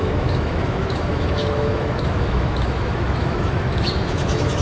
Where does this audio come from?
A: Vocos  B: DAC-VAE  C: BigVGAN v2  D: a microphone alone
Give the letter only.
B